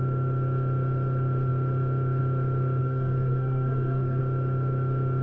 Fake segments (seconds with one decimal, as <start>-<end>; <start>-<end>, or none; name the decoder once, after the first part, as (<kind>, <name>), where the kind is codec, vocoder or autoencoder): 2.8-4.2 (codec, SNAC)